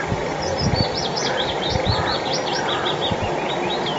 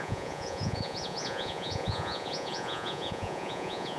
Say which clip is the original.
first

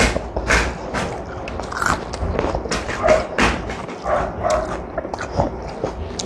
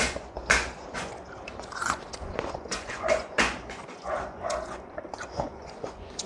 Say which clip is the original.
first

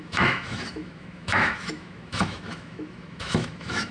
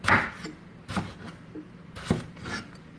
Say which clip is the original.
second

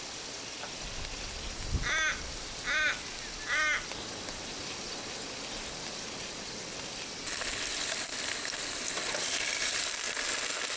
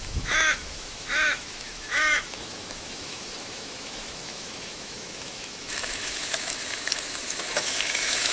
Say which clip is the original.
first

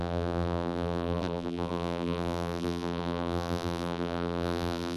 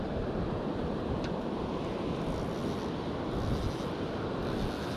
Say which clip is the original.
second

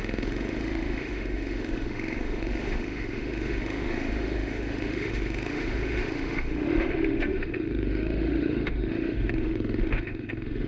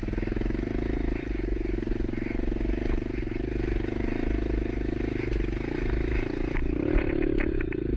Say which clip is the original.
second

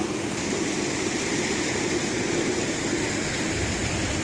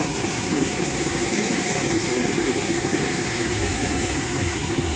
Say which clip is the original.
first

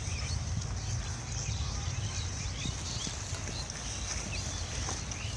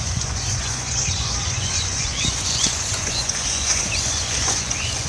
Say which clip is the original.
first